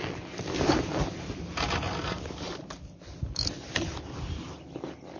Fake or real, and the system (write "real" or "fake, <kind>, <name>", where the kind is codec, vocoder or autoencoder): real